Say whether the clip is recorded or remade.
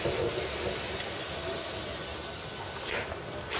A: recorded